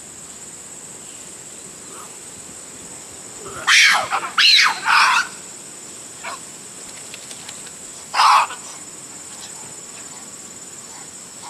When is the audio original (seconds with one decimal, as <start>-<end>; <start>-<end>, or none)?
0.0-11.5